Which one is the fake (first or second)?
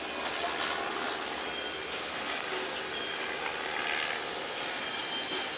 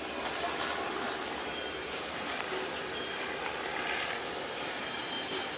second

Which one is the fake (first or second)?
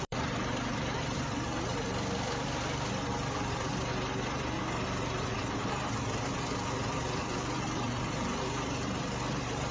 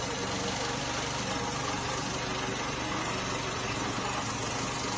first